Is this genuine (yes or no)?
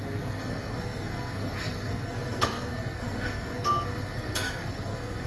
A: no